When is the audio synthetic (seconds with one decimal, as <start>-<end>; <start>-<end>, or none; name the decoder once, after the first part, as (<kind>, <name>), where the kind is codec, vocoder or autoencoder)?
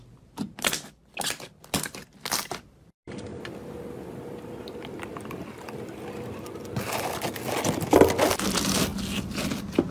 0.0-1.0 (vocoder, BigVGAN v2); 2.4-3.3; 8.4-8.9; 9.5-9.9